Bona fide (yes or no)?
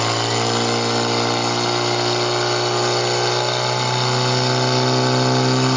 yes